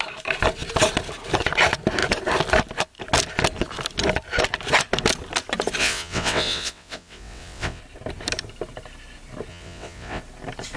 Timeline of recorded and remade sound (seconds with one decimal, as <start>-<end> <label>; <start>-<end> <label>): 0.0-5.8 recorded; 5.8-7.8 remade; 7.8-9.5 recorded; 9.5-10.2 remade; 10.2-10.8 recorded